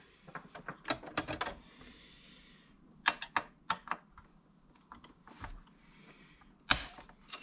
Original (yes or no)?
yes